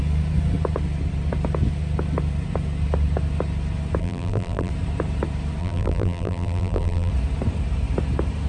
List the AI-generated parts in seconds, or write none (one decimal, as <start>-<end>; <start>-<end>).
4.0-4.7; 5.6-7.1